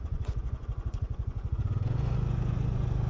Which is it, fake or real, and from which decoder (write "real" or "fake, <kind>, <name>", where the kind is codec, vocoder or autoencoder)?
fake, vocoder, Vocos